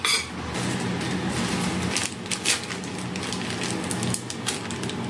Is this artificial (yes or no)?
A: no